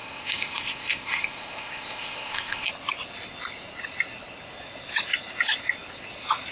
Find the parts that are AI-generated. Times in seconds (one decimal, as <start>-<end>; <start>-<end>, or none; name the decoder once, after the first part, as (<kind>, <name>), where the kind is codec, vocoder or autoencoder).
0.0-2.7 (codec, ZipCodec)